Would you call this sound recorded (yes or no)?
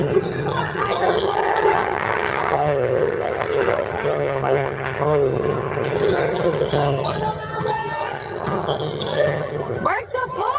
no